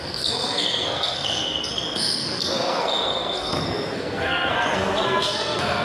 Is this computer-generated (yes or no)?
yes